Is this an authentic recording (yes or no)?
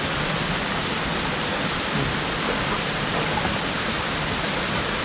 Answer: yes